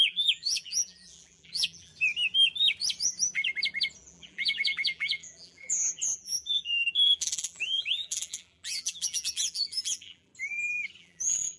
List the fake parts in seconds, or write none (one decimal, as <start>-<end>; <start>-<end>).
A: 0.0-1.9; 4.0-10.3; 11.0-11.6

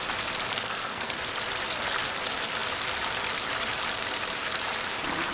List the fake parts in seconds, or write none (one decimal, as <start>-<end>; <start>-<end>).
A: 0.6-1.2

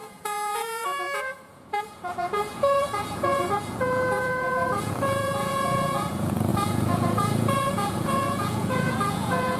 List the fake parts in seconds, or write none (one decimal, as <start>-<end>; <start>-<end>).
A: 0.0-9.6

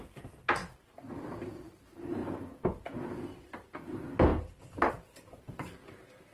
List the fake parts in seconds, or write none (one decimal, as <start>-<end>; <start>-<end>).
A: none